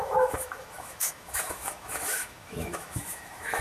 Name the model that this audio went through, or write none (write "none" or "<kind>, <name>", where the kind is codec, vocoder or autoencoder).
autoencoder, DAC-VAE